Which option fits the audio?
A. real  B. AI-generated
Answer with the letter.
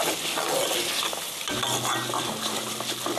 A